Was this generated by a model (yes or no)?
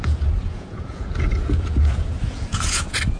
yes